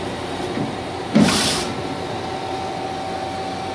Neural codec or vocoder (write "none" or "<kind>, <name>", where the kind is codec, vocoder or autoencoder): none